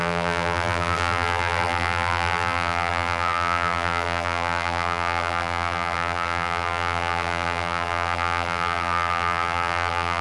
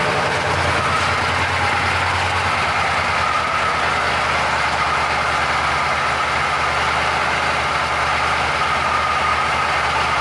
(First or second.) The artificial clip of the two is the first